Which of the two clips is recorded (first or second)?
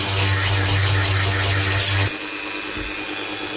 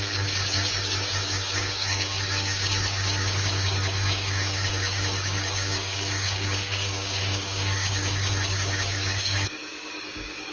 first